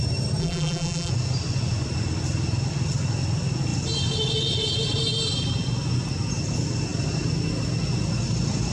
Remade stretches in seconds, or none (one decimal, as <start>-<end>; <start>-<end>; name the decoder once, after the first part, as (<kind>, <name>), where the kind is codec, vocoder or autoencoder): 0.4-1.1 (vocoder, BigVGAN v2)